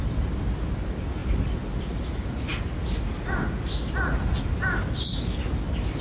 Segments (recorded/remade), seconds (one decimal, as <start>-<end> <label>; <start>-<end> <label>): 0.0-6.0 recorded